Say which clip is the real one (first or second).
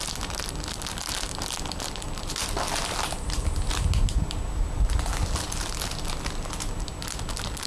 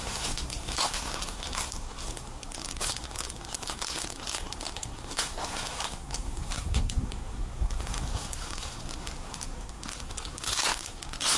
first